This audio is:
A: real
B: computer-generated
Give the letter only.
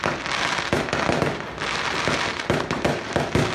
A